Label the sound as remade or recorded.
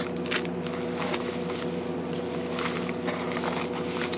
recorded